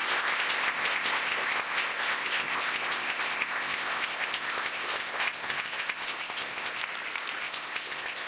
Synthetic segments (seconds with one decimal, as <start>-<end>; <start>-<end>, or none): 0.0-6.8; 7.4-8.3